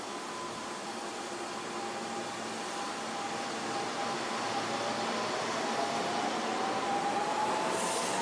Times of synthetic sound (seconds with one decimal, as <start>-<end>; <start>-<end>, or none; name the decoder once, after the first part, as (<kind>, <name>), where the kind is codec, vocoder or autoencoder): none